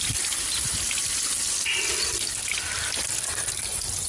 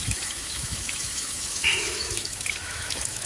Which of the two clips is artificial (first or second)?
second